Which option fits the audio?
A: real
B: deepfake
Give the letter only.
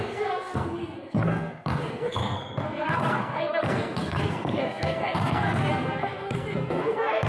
B